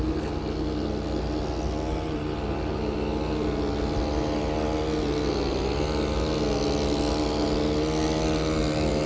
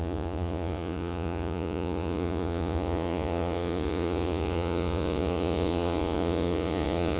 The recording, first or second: first